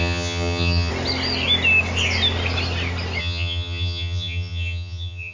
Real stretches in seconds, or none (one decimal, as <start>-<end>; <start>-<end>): 0.9-3.2